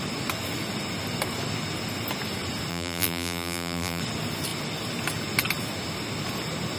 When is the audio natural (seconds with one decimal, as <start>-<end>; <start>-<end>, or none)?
0.0-2.7; 4.0-6.8